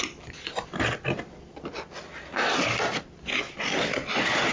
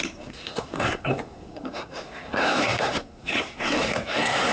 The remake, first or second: second